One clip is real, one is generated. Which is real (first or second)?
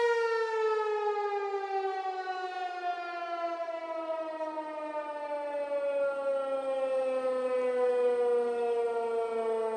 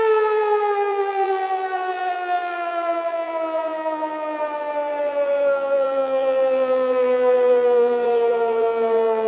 first